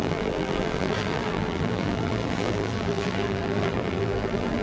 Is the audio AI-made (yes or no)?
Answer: yes